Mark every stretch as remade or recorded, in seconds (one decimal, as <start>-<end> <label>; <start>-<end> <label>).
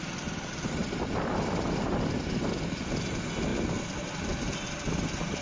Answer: 0.0-5.4 recorded